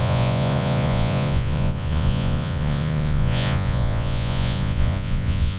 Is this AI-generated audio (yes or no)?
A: yes